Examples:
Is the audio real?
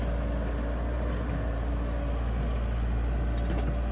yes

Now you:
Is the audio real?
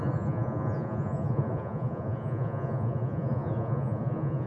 no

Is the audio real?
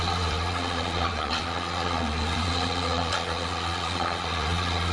no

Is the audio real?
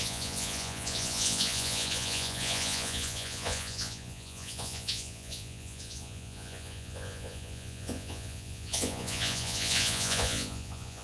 no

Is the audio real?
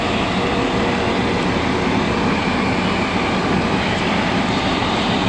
yes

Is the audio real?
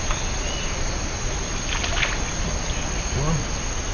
yes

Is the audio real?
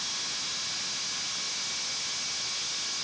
yes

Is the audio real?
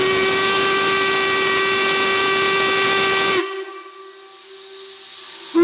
yes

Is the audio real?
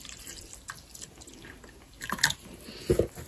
yes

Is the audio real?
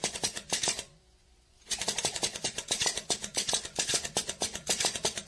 no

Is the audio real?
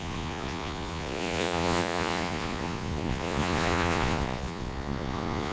no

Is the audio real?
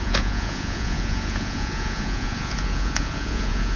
no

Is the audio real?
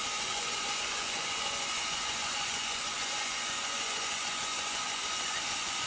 no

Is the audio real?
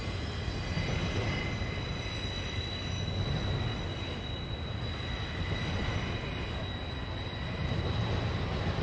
yes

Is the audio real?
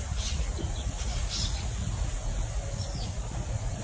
no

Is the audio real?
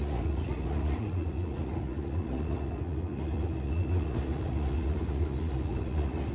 no